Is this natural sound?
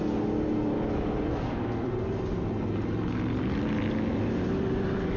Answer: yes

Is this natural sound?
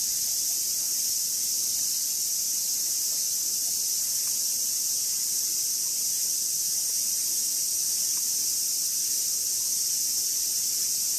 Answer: yes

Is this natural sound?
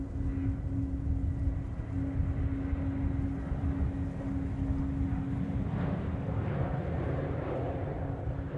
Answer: yes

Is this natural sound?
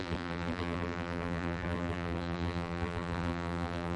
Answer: no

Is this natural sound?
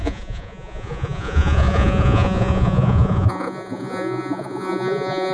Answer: no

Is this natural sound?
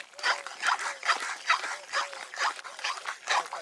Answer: yes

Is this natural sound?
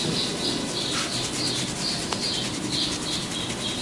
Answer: yes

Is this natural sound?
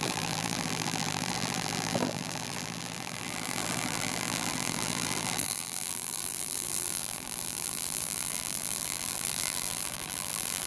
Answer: no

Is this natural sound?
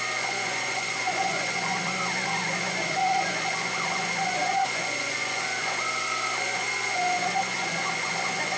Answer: no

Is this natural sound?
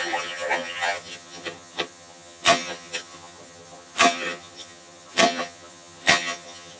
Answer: no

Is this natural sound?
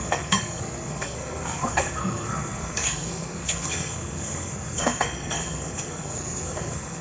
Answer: no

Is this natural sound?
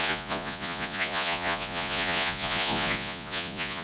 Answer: no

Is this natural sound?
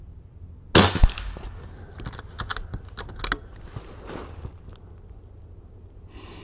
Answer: yes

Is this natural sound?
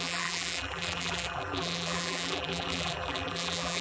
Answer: no